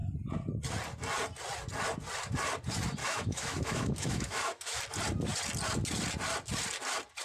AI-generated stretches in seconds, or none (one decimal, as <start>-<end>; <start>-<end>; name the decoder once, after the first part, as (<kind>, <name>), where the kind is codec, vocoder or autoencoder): 3.0-4.8 (autoencoder, DAC-VAE)